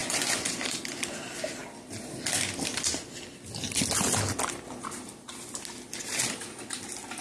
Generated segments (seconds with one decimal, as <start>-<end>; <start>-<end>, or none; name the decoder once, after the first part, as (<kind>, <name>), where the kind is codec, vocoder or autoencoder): 0.0-0.8 (vocoder, Vocos)